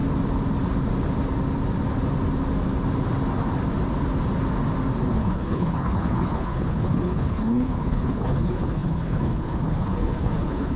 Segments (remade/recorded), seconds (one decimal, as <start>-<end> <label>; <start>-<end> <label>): 0.0-5.1 recorded; 5.1-10.8 remade